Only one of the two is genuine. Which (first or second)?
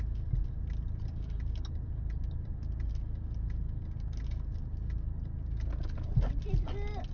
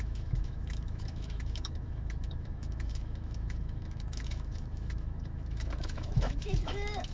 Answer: first